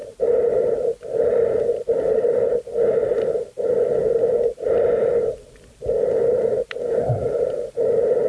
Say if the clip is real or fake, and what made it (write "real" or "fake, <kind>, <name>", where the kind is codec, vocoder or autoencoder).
fake, vocoder, BigVGAN v2